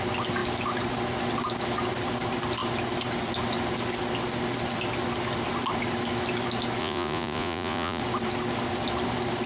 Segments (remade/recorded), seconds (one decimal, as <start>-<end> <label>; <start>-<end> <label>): 0.0-6.8 recorded; 6.8-8.0 remade; 8.0-9.5 recorded